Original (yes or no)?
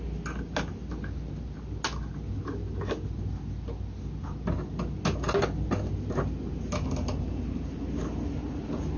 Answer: yes